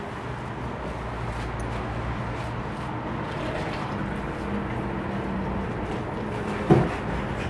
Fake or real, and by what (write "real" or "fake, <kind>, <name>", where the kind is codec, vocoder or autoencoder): real